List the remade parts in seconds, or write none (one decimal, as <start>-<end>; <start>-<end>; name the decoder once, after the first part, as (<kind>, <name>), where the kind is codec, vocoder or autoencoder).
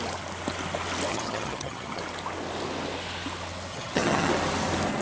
1.1-2.0 (vocoder, HiFi-GAN); 3.7-4.3